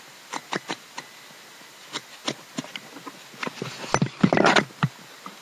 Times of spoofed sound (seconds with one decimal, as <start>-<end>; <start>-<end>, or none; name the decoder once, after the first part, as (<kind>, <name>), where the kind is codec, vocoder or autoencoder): none